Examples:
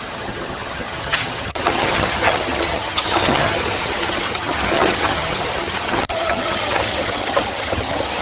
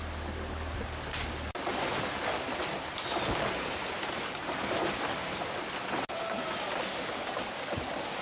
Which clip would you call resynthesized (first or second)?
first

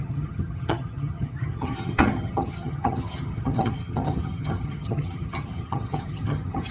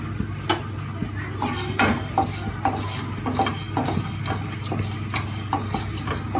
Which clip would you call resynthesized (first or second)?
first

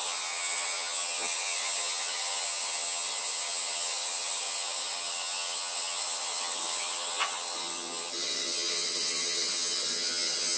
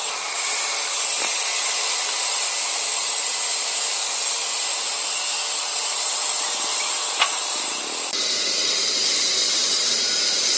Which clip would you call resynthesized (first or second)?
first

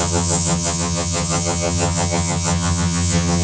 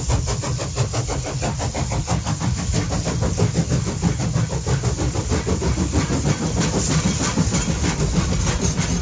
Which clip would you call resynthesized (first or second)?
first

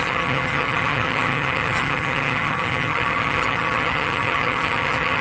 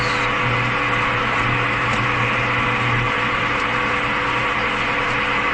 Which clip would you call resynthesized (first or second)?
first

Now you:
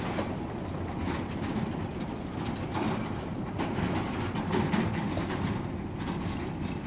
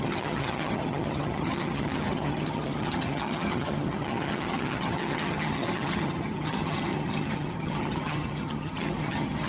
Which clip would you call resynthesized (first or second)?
second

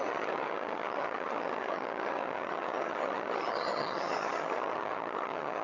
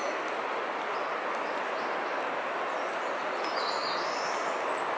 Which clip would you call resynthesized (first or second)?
first